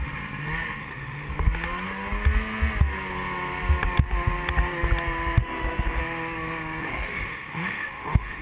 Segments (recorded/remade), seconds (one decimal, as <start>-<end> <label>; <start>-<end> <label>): 0.0-0.8 recorded; 0.8-1.3 remade; 1.3-5.4 recorded; 5.4-6.0 remade; 6.0-6.8 recorded; 6.8-8.4 remade